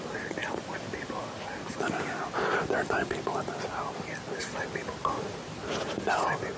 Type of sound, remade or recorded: recorded